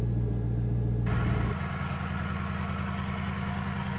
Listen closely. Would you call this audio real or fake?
real